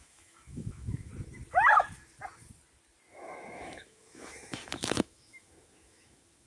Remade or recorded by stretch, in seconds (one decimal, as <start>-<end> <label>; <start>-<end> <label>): 0.0-1.1 remade; 1.1-3.1 recorded; 3.1-6.5 remade